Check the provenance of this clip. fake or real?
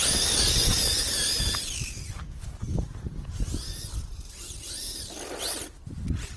real